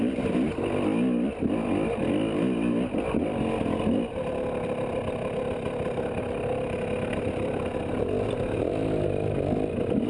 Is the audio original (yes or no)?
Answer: yes